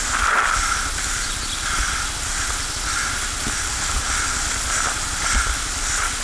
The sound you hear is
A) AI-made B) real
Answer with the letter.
B